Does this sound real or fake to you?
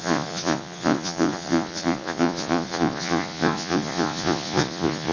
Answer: fake